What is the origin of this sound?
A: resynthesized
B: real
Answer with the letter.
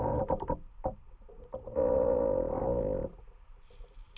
B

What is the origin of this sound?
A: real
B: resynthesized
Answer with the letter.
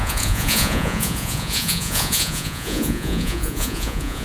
B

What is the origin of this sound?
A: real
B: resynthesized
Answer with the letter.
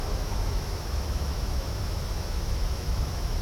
B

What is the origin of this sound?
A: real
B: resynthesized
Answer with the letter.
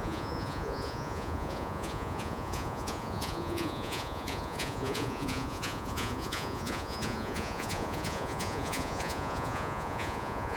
B